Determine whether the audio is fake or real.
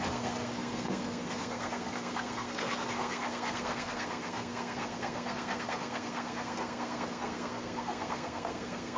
fake